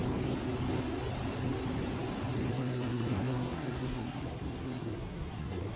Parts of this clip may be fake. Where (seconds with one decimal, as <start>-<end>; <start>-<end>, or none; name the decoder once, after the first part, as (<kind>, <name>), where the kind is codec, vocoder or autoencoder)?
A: 2.5-5.8 (codec, SNAC)